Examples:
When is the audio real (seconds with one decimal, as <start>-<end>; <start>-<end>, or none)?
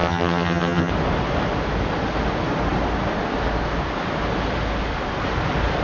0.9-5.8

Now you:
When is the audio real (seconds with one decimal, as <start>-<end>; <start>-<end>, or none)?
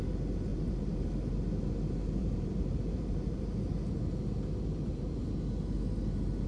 0.0-0.5; 1.3-2.2; 3.7-6.5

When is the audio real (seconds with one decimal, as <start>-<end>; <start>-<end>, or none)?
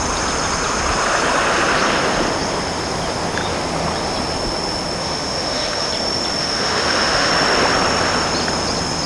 0.0-5.0; 5.9-6.4; 7.3-9.1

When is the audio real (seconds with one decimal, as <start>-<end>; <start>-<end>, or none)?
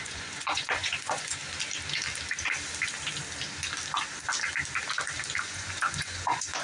1.4-5.4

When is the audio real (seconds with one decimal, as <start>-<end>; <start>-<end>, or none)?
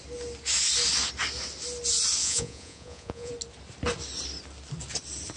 0.0-2.2; 3.3-5.4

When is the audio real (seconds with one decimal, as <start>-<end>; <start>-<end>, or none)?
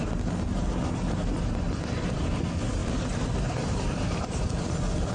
0.0-5.1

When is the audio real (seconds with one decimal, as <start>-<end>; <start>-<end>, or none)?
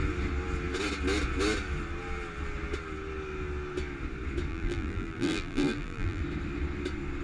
0.0-4.5; 6.2-7.2